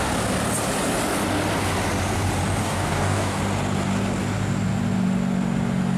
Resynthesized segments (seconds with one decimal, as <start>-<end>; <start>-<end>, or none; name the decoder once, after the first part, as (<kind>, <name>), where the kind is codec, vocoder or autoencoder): 2.6-3.4 (codec, DAC)